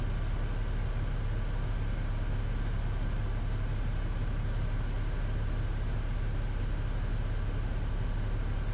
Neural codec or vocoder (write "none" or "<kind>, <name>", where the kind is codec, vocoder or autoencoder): none